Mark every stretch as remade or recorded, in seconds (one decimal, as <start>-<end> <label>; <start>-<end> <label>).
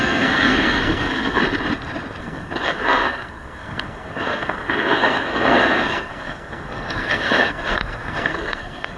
0.0-1.4 remade; 1.4-2.2 recorded; 2.2-9.0 remade